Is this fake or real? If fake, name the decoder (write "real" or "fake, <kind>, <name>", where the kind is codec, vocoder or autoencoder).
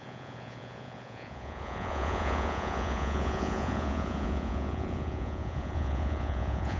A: fake, vocoder, Vocos